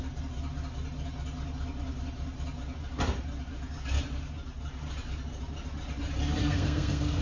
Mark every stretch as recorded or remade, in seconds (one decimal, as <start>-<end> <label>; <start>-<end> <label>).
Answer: 0.0-6.4 recorded; 6.4-7.2 remade